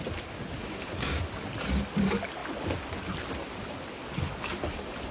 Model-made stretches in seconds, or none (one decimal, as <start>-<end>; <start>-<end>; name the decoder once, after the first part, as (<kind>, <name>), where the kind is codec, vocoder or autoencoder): 0.6-1.2 (codec, DAC)